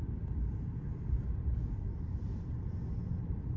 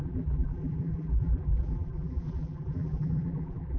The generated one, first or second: second